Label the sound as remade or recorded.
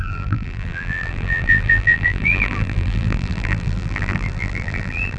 remade